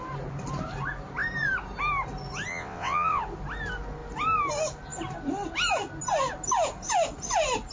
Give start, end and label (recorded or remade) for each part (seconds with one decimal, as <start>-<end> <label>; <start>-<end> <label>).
0.0-2.5 recorded; 2.5-3.2 remade; 3.2-7.7 recorded